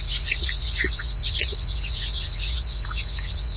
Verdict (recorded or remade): remade